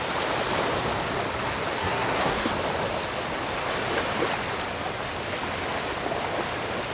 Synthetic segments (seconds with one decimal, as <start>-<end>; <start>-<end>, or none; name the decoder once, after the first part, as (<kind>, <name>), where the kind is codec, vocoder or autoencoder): 1.8-2.5 (codec, SNAC)